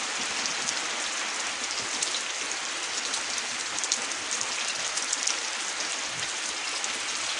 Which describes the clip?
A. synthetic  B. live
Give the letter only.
B